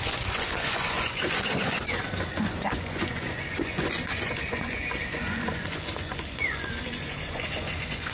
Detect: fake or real fake